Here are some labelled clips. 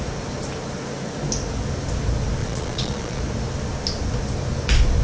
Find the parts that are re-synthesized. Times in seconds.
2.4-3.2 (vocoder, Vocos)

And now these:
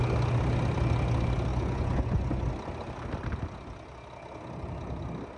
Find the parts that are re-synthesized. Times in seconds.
1.5-2.5 (vocoder, Vocos)

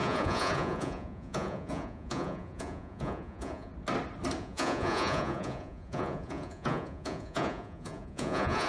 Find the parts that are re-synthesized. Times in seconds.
0.0-3.7 (vocoder, Vocos); 4.4-8.7

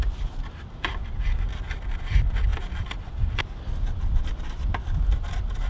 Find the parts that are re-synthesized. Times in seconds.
none

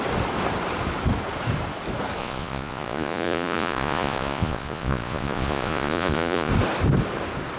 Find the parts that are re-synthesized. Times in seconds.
2.2-6.5 (vocoder, Vocos)

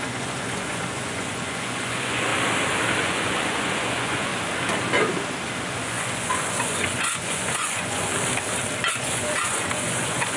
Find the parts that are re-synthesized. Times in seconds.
0.0-2.3 (vocoder, Vocos); 3.0-4.3; 5.6-8.1; 8.9-10.4

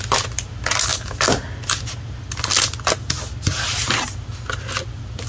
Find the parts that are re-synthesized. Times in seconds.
none